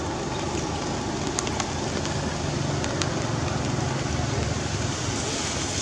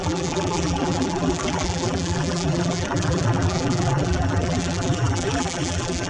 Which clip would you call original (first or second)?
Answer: first